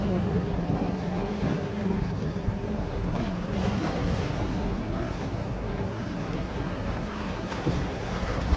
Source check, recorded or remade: remade